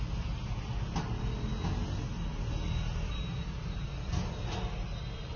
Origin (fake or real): real